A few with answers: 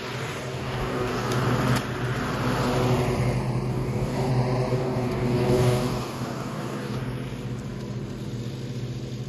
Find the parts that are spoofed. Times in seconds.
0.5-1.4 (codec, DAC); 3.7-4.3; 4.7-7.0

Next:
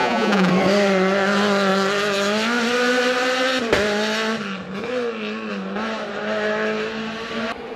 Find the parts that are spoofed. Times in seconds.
0.0-0.5 (vocoder, Vocos)

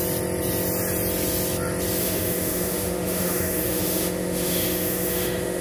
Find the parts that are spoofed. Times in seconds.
2.0-5.6 (autoencoder, DAC-VAE)

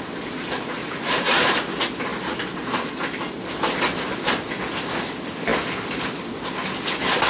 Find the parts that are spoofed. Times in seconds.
0.8-1.6 (vocoder, BigVGAN v2)

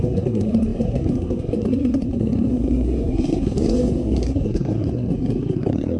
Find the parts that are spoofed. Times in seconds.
0.0-6.0 (codec, SNAC)

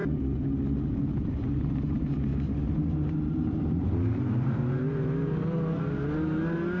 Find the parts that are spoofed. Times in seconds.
1.3-4.6 (vocoder, BigVGAN v2)